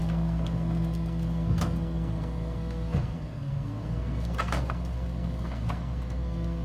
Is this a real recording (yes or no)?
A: no